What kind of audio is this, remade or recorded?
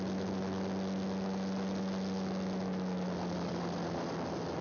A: recorded